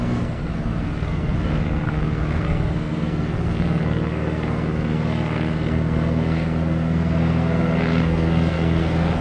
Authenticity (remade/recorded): remade